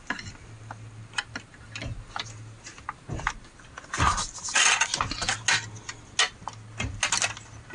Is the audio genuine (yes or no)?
yes